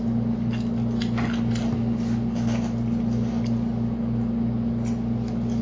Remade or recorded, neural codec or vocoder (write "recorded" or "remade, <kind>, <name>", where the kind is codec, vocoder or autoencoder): recorded